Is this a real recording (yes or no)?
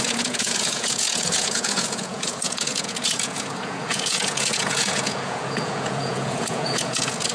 no